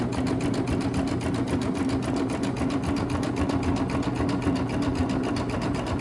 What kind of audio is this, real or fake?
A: real